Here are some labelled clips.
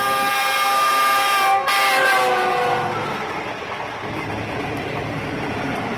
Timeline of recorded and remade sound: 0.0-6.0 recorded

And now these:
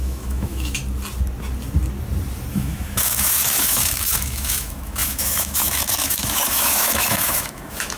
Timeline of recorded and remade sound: 0.0-0.8 remade; 0.8-2.5 recorded; 2.5-8.0 remade

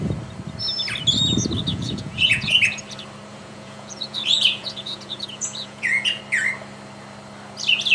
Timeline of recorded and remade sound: 0.0-1.7 recorded; 1.7-2.8 remade; 2.8-3.3 recorded; 3.3-6.2 remade; 6.2-7.9 recorded

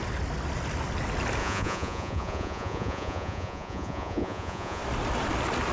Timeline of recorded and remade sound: 0.0-1.4 recorded; 1.4-4.8 remade; 4.8-5.7 recorded

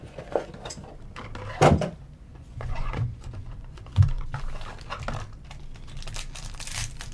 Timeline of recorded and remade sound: 0.0-0.6 remade; 0.6-2.3 recorded; 2.3-4.2 remade; 4.2-7.1 recorded

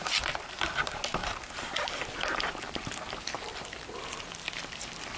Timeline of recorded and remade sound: 0.0-1.2 recorded; 1.2-4.3 remade; 4.3-5.2 recorded